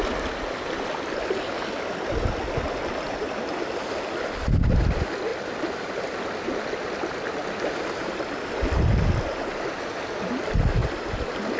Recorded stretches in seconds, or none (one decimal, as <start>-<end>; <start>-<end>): 0.0-11.6